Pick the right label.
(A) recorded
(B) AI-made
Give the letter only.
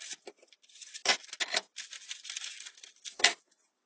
A